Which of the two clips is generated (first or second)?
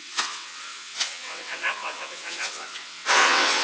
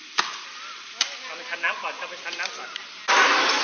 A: first